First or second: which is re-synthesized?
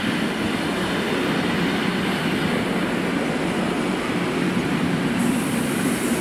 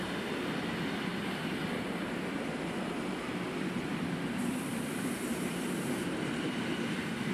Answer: second